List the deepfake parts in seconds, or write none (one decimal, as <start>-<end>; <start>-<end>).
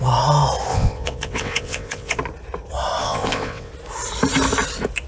0.7-2.2; 3.0-3.7